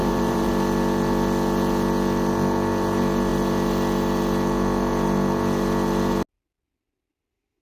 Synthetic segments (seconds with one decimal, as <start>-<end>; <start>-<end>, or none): 0.0-0.5